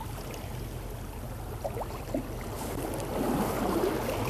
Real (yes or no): yes